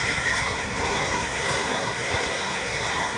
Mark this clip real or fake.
fake